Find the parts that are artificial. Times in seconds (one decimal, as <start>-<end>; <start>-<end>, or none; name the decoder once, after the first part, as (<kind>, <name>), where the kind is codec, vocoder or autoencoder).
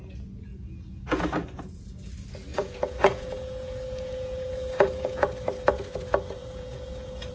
0.5-2.1 (vocoder, Vocos); 2.5-5.2; 6.4-7.3